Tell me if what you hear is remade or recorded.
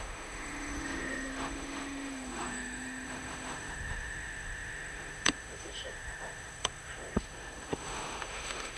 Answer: remade